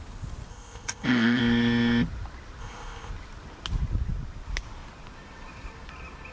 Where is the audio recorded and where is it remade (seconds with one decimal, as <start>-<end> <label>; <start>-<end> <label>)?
0.0-0.5 recorded; 0.5-1.4 remade; 1.4-2.6 recorded; 2.6-3.1 remade; 3.1-6.3 recorded